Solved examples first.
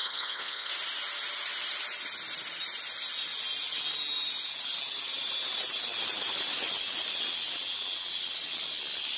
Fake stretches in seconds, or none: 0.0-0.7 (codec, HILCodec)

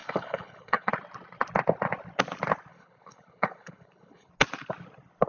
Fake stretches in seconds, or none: 0.0-0.9 (codec, HILCodec); 2.7-4.3

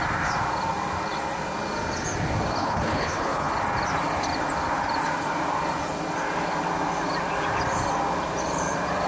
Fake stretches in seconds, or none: 2.6-3.5 (codec, HILCodec)

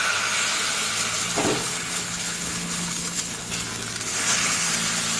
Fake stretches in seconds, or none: 1.6-3.5 (codec, HILCodec); 4.1-4.7

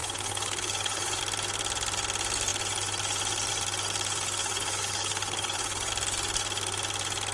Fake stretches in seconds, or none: 0.0-1.2 (codec, HILCodec); 4.4-5.9